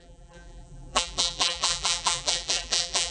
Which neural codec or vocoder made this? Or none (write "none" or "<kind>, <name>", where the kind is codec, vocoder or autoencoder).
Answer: vocoder, BigVGAN v2